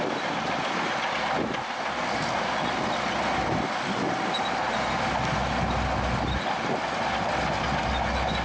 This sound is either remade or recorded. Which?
recorded